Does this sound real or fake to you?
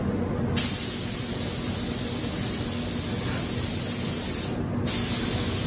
real